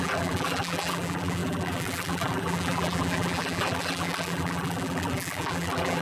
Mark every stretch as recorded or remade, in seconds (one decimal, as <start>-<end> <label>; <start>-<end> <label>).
0.0-6.0 remade

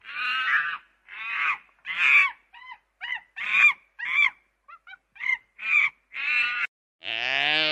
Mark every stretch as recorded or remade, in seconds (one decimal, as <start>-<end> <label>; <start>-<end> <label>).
0.0-2.2 recorded; 2.2-5.9 remade; 5.9-7.7 recorded

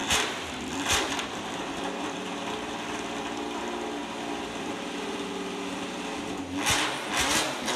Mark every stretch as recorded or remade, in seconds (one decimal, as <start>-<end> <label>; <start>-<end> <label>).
0.0-3.6 remade; 3.6-4.0 recorded; 4.0-6.4 remade; 6.4-7.8 recorded

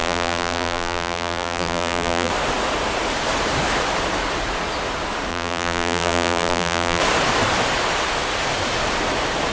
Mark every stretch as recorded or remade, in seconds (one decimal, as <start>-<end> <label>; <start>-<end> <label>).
0.0-2.3 remade; 2.3-5.3 recorded; 5.3-7.0 remade; 7.0-9.5 recorded